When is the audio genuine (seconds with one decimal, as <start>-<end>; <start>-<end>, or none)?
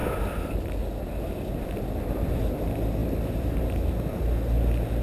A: 2.4-3.0; 3.6-5.0